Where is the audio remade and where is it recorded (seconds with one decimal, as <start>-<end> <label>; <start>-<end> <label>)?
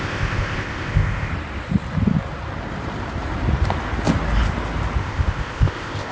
0.0-1.3 remade; 1.3-5.0 recorded; 5.0-6.1 remade